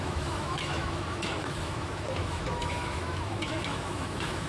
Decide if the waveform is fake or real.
fake